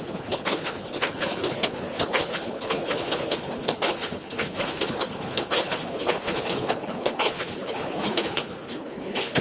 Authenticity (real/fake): fake